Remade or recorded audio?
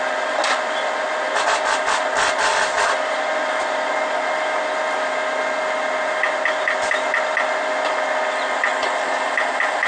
recorded